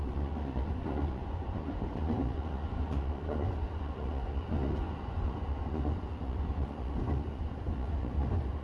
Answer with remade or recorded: remade